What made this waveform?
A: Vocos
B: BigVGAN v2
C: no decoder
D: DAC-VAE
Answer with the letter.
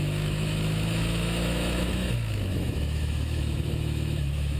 D